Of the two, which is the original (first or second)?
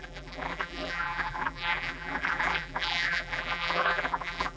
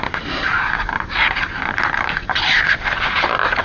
second